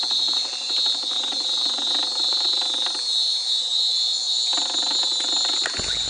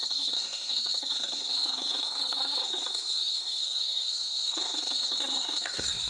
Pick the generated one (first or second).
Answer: second